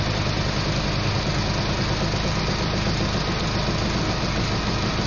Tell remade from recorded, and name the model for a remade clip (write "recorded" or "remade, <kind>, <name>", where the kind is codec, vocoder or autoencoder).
recorded